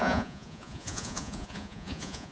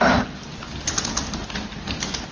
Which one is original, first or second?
second